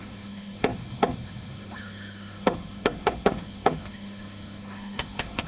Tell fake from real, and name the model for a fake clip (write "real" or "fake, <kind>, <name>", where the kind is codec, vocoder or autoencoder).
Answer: fake, autoencoder, DAC-VAE